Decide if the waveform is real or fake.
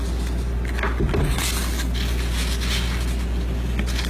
real